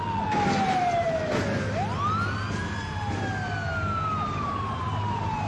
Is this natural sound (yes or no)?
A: yes